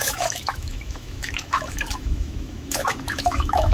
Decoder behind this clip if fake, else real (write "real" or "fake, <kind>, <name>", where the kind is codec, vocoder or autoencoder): fake, autoencoder, DAC-VAE